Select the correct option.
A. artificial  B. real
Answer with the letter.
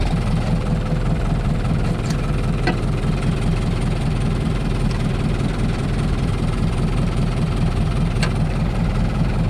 A